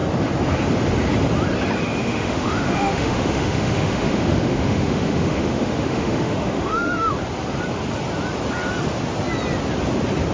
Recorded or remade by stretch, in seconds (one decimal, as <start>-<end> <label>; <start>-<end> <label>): 0.0-2.0 recorded; 2.0-7.1 remade; 7.1-10.3 recorded